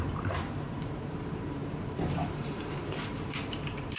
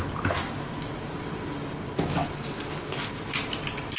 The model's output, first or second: first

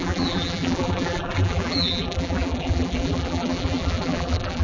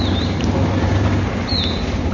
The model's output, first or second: first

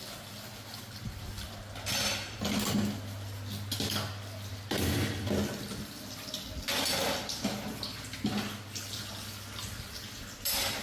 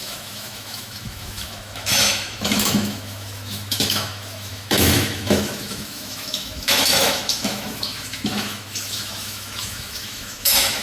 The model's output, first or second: second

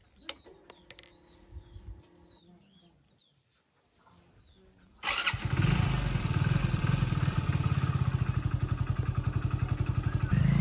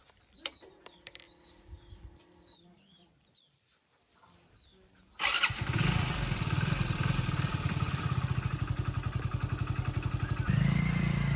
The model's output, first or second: second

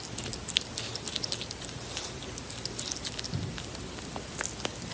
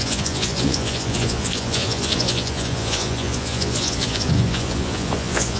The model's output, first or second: second